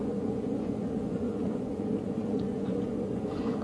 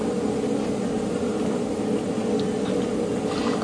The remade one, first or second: first